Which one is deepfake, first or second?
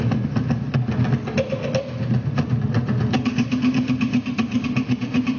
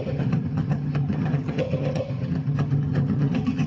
second